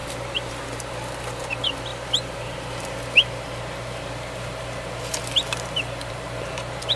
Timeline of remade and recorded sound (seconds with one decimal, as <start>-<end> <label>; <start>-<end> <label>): 0.0-1.9 recorded; 1.9-6.1 remade; 6.1-7.0 recorded